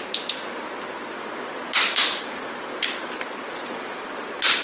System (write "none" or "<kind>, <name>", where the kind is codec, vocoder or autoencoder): none